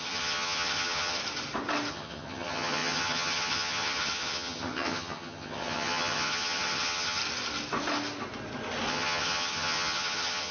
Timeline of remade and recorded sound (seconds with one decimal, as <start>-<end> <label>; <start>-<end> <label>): 0.0-1.2 remade; 1.2-1.9 recorded; 1.9-7.2 remade; 7.2-8.9 recorded; 8.9-10.5 remade